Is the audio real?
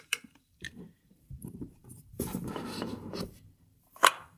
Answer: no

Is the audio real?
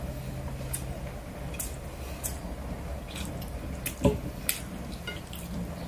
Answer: yes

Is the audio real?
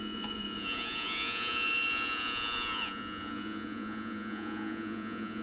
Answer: no